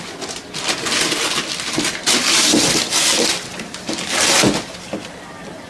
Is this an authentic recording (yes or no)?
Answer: yes